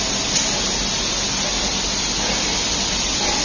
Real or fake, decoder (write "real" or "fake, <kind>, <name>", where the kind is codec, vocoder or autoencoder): real